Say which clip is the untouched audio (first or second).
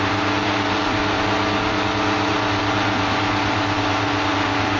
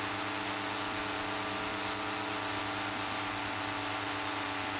second